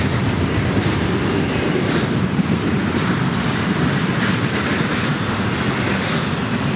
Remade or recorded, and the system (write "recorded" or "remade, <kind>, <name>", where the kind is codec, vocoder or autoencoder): recorded